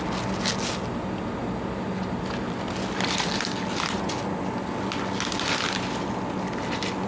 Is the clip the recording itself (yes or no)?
yes